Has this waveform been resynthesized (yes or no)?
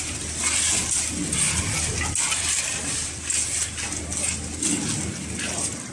no